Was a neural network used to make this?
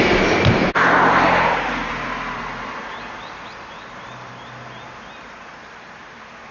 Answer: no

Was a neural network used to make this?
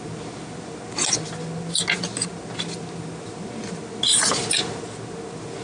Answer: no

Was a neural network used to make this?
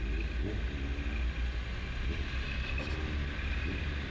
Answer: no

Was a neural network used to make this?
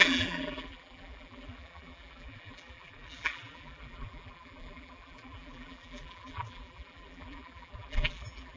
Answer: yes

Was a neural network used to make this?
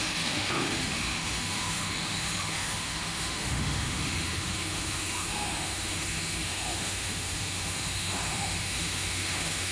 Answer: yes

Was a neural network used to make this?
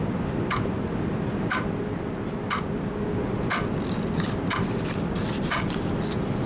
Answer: no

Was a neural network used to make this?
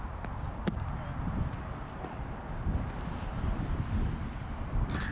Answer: no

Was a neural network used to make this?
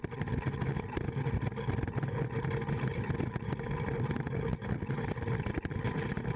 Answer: no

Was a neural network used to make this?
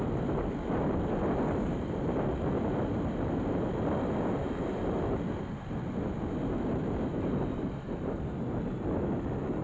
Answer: no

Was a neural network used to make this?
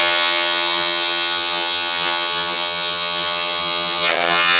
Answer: yes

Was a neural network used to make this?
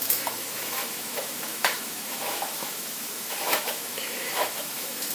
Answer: yes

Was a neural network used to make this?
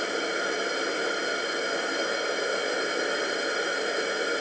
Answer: no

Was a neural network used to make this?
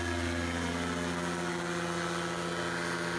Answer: no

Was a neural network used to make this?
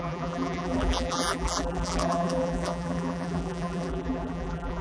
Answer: yes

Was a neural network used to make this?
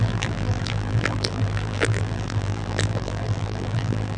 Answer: yes